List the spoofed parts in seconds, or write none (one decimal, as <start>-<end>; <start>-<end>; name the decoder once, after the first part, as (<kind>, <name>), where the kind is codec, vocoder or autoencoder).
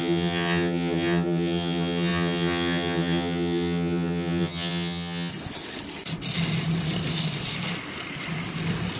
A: 0.0-5.3 (vocoder, HiFi-GAN)